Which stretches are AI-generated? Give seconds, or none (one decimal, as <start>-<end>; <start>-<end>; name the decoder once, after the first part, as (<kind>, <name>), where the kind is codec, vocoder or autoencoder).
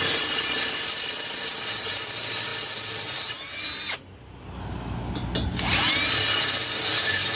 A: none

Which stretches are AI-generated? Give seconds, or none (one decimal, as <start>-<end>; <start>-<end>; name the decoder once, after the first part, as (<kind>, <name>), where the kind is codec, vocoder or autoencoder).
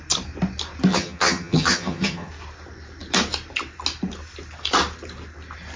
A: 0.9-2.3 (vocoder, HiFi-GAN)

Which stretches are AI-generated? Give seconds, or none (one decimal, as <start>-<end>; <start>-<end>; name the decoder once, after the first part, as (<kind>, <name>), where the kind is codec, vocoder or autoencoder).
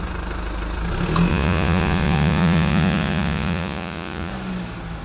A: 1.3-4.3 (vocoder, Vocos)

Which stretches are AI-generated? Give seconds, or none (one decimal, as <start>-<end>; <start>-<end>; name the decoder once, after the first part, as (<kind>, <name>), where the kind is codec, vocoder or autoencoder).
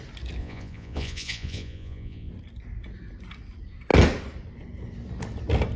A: 0.4-2.3 (vocoder, Vocos)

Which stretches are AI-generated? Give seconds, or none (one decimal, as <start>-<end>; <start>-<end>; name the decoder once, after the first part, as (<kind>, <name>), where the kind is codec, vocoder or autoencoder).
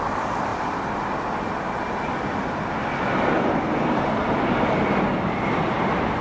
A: none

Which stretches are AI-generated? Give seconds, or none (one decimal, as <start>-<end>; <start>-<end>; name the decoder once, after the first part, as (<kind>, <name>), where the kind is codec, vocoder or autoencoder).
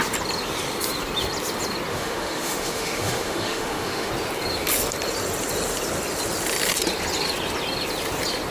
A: 1.9-4.1 (autoencoder, DAC-VAE)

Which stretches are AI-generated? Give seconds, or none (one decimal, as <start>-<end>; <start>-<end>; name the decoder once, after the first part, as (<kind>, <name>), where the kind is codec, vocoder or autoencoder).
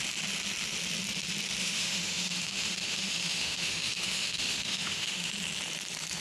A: 1.6-5.3 (autoencoder, DAC-VAE)